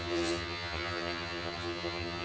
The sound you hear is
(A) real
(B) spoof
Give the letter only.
B